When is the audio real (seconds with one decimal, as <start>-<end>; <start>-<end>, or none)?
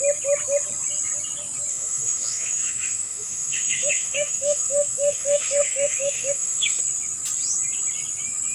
0.0-1.7; 6.8-8.5